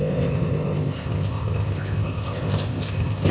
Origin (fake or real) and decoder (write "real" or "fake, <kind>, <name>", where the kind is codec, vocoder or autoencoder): fake, codec, ZipCodec